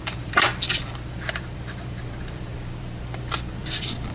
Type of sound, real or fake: fake